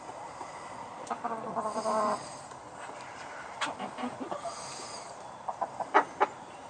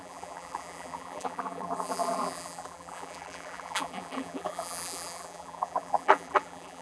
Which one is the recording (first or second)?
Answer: first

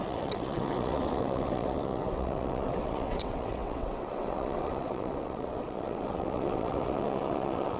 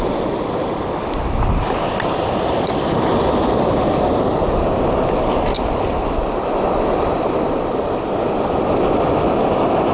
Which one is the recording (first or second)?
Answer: second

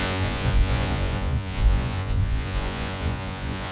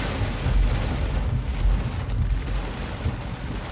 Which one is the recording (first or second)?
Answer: second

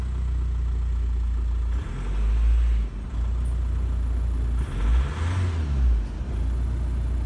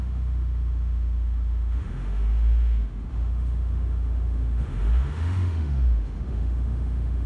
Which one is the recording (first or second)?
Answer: first